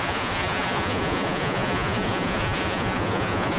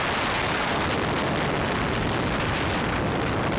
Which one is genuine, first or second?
second